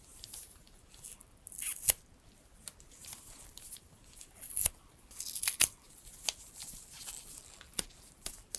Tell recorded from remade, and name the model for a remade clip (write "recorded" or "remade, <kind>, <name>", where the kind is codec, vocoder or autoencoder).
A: recorded